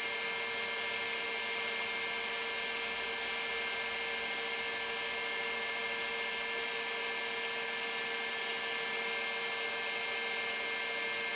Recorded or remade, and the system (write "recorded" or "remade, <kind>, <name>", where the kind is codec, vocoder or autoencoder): recorded